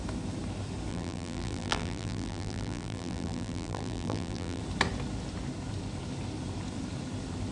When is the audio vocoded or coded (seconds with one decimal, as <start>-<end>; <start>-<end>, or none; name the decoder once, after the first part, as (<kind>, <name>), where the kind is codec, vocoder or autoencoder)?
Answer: 0.9-4.6 (vocoder, BigVGAN v2)